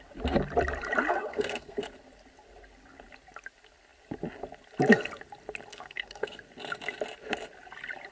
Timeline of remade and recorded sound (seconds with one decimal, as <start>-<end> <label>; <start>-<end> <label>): 0.0-1.1 recorded; 1.1-1.8 remade; 1.8-5.7 recorded; 5.7-6.4 remade; 6.4-8.1 recorded